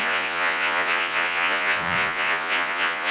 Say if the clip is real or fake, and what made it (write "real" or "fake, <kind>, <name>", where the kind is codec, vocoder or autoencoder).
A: fake, vocoder, Vocos